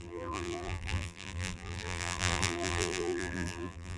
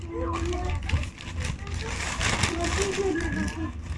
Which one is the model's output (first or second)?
first